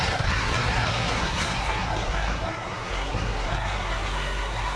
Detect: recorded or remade remade